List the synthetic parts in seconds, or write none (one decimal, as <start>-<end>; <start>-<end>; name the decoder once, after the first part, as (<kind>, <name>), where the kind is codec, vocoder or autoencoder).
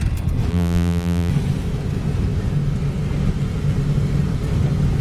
0.5-1.3 (vocoder, BigVGAN v2)